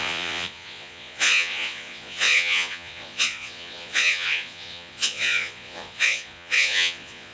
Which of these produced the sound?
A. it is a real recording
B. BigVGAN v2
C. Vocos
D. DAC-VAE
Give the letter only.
C